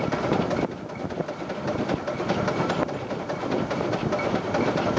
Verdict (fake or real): real